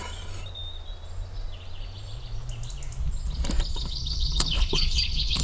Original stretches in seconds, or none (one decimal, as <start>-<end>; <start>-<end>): 0.0-3.7